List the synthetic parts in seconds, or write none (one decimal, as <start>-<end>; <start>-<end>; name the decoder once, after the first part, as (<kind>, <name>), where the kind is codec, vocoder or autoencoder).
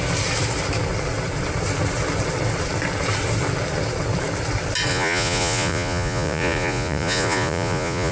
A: 4.9-8.1 (vocoder, Vocos)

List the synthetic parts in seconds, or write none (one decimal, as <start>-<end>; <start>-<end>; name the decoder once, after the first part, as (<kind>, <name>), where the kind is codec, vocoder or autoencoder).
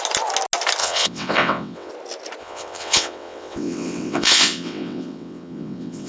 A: 0.8-1.9 (vocoder, WaveNeXt); 2.4-6.1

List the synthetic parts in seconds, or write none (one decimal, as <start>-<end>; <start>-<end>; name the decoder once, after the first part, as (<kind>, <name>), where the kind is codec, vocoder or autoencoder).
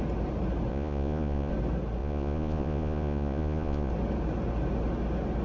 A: 0.7-1.5 (vocoder, Vocos); 2.0-3.9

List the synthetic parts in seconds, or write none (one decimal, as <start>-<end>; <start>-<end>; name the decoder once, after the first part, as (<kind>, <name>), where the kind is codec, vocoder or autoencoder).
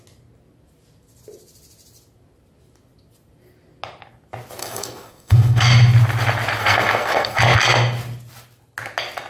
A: 4.6-5.7 (codec, SNAC); 6.6-7.4